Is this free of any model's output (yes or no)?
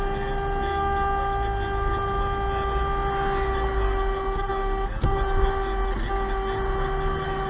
yes